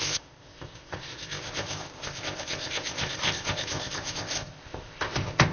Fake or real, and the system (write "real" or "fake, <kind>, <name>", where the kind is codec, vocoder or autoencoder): fake, codec, ZipCodec